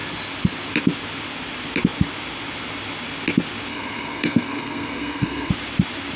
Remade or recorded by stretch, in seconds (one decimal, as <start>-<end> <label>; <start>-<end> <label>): 0.0-3.7 recorded; 3.7-5.5 remade; 5.5-6.2 recorded